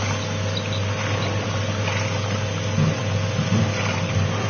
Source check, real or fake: real